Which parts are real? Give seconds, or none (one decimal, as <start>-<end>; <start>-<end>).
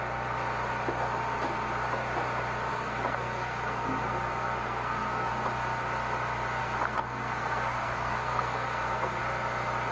0.0-2.7; 5.3-6.6; 9.2-9.9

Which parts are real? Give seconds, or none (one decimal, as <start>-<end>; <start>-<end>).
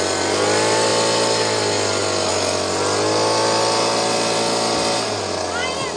0.0-6.0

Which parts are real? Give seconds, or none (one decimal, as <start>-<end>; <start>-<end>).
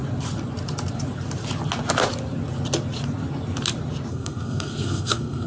0.0-4.1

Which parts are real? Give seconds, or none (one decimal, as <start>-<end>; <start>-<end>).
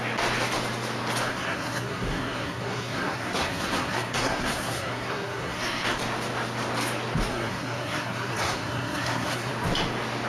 0.0-1.3; 6.0-7.3; 9.5-10.3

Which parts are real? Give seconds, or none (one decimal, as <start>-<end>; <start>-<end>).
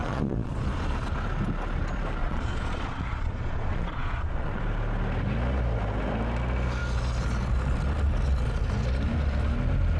0.5-2.2; 4.6-10.0